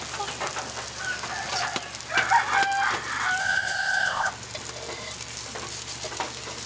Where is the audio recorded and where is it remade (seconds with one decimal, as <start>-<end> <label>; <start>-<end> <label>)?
0.0-3.4 recorded; 3.4-4.3 remade; 4.3-6.7 recorded